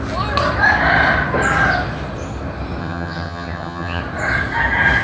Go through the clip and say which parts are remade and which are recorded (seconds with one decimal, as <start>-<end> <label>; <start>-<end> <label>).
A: 0.0-2.8 recorded; 2.8-4.0 remade; 4.0-5.0 recorded

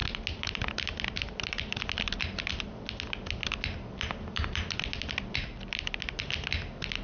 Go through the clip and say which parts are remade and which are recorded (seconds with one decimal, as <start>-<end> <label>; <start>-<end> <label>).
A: 0.0-7.0 recorded

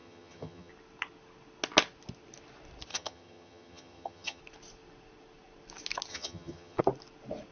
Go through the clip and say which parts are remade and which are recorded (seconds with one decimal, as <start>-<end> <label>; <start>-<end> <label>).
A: 0.0-0.7 remade; 0.7-2.9 recorded; 2.9-4.4 remade; 4.4-6.1 recorded; 6.1-6.8 remade; 6.8-7.5 recorded

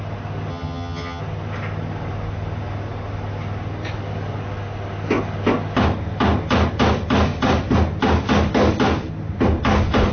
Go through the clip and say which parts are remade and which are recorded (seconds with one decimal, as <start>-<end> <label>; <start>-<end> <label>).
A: 0.0-0.5 recorded; 0.5-1.2 remade; 1.2-10.1 recorded